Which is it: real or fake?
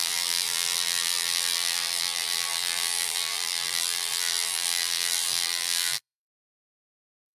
fake